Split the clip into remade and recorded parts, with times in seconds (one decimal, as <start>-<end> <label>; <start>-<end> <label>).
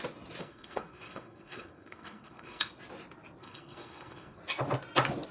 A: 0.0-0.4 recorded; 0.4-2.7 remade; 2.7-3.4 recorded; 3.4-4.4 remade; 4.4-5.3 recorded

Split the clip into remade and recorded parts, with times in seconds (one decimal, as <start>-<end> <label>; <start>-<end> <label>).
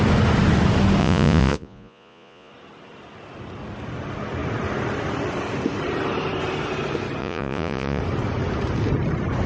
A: 0.0-1.0 recorded; 1.0-2.5 remade; 2.5-7.2 recorded; 7.2-8.0 remade; 8.0-9.5 recorded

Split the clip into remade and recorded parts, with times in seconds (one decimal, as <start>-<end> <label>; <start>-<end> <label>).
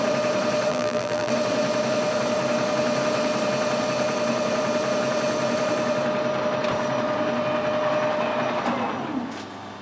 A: 0.0-0.7 recorded; 0.7-1.3 remade; 1.3-9.8 recorded